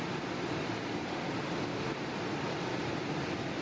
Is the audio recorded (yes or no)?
yes